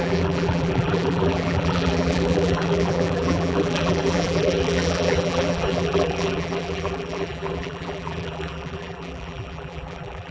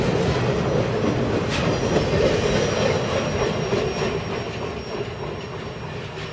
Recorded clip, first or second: second